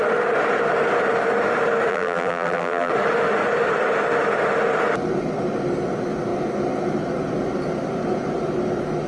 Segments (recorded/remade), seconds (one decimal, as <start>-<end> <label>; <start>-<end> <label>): 0.0-1.9 recorded; 1.9-2.9 remade; 2.9-9.1 recorded